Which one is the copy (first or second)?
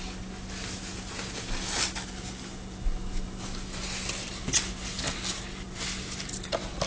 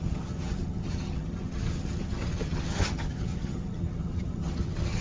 second